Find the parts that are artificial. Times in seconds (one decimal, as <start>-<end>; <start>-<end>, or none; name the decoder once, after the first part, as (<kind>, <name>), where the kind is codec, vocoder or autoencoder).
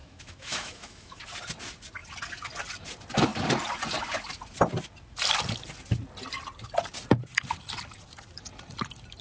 0.0-1.2 (autoencoder, DAC-VAE)